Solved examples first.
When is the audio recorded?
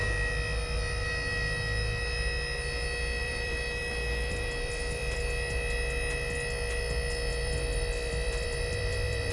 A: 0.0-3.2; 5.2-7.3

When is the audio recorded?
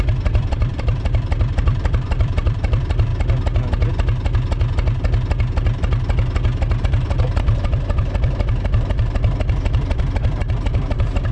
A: 3.1-6.8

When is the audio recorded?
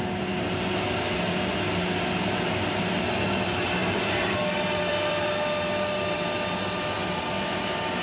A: 0.0-3.8; 5.3-8.0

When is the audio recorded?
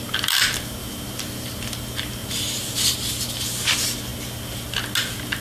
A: 0.0-0.8; 1.6-2.2; 3.1-5.4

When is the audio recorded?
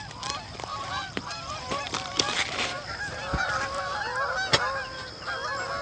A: 0.0-0.7; 1.6-5.8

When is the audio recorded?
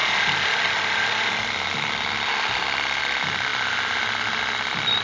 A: 0.0-5.0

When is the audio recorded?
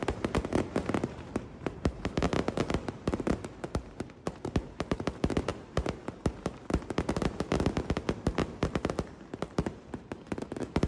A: none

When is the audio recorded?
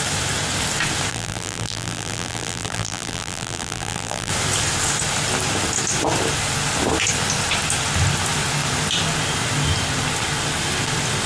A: 0.0-1.1; 4.3-11.3